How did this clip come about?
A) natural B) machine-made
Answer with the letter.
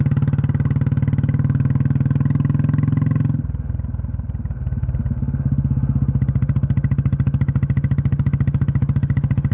A